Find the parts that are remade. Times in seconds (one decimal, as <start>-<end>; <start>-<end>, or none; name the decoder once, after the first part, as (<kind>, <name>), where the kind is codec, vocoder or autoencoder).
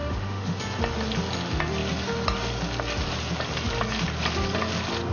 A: 0.0-0.6 (autoencoder, DAC-VAE)